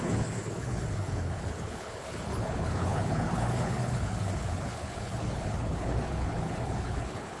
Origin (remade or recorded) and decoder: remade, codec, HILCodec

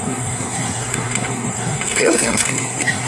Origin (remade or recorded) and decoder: remade, codec, SNAC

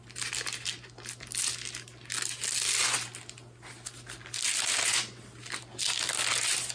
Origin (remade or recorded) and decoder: recorded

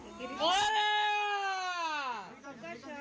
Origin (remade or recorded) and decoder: recorded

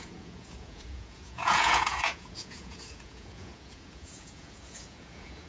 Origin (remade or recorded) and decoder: remade, vocoder, Vocos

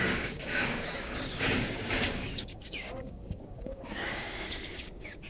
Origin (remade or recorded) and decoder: remade, codec, DAC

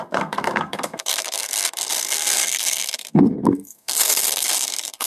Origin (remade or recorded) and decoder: remade, codec, SNAC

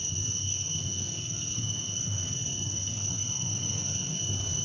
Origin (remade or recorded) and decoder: remade, codec, SNAC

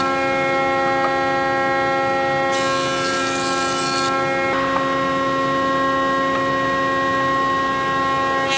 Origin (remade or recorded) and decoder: recorded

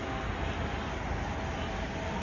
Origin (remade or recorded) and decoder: recorded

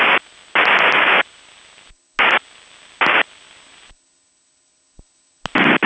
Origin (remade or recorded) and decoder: recorded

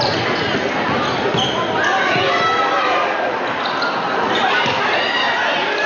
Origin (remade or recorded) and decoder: recorded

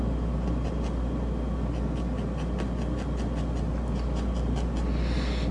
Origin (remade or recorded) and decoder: recorded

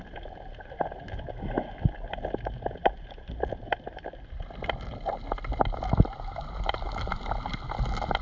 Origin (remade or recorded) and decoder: recorded